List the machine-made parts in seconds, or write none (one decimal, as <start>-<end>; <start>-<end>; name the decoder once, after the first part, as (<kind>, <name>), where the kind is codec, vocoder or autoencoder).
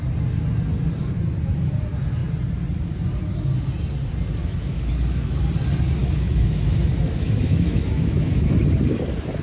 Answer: 4.4-5.4 (autoencoder, DAC-VAE); 6.0-8.5